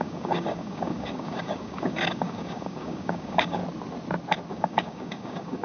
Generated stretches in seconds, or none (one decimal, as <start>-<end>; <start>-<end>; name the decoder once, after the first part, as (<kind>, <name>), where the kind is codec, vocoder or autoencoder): 0.0-3.6 (codec, DAC); 4.5-5.6